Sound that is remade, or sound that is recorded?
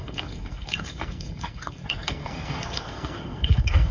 remade